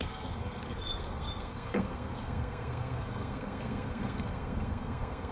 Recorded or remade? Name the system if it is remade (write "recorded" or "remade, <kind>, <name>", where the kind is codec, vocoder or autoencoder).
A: remade, codec, SNAC